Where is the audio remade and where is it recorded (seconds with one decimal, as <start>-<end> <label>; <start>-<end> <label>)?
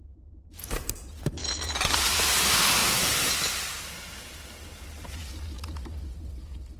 0.0-1.4 remade; 1.4-2.2 recorded; 2.2-5.2 remade; 5.2-6.3 recorded; 6.3-6.8 remade